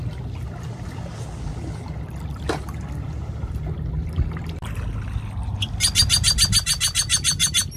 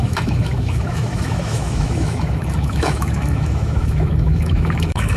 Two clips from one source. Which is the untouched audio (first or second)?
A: first